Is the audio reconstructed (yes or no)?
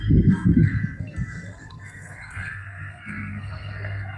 yes